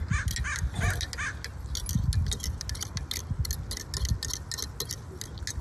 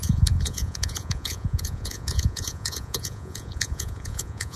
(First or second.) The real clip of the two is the first